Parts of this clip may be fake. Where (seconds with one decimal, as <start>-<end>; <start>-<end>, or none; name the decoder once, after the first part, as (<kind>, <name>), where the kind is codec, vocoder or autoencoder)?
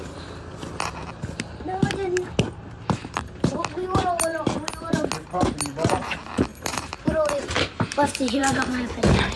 3.0-3.5 (vocoder, BigVGAN v2); 4.3-5.1; 6.5-7.5